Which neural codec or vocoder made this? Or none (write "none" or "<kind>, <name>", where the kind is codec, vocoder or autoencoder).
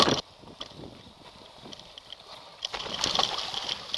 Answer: vocoder, BigVGAN v2